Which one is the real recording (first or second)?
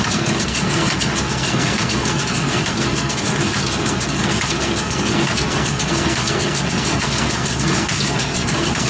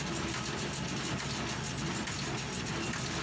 second